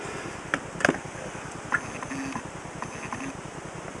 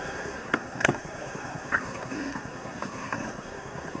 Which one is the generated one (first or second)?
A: second